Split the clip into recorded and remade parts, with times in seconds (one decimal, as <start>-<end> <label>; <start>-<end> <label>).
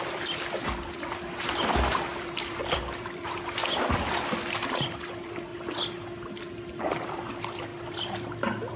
0.0-5.5 remade; 5.5-6.8 recorded; 6.8-8.8 remade